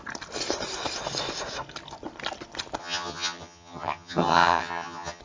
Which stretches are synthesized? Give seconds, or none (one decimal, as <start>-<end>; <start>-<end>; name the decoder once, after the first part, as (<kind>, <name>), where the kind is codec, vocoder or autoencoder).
2.8-5.2 (vocoder, HiFi-GAN)